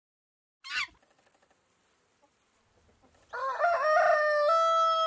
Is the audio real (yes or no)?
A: yes